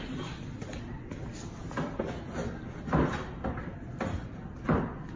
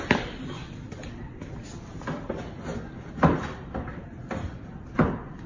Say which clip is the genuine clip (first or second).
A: first